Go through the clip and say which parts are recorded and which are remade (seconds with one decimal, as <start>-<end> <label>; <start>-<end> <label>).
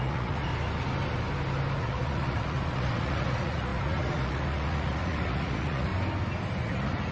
0.0-0.5 remade; 0.5-1.8 recorded; 1.8-5.9 remade; 5.9-6.6 recorded; 6.6-7.1 remade